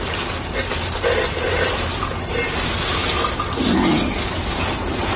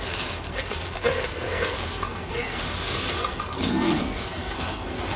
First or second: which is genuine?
first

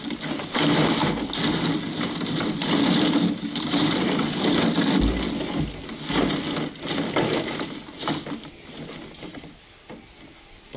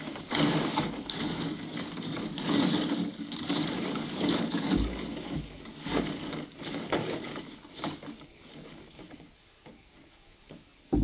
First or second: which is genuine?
first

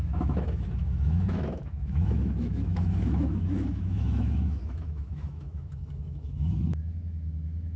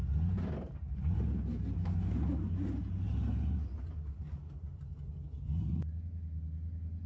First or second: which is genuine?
second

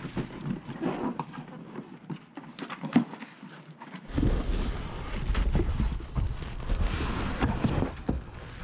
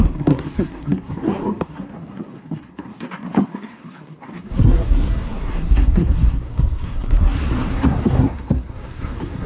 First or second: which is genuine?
first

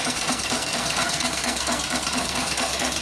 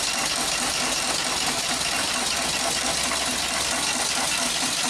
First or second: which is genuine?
second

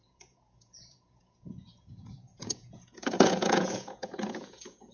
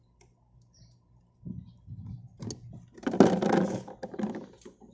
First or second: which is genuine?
second